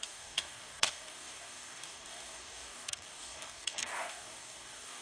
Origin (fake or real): fake